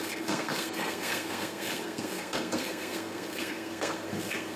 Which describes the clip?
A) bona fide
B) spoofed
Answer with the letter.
B